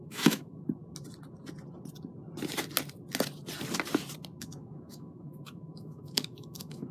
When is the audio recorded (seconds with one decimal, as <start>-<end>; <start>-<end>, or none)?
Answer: 0.8-4.4